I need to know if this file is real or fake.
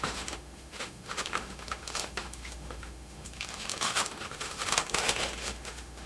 fake